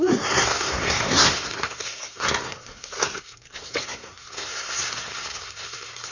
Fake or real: fake